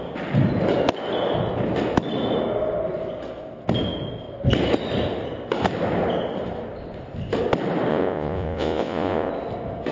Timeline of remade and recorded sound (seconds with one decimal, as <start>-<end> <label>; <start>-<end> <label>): 0.0-7.9 recorded; 7.9-9.3 remade; 9.3-9.9 recorded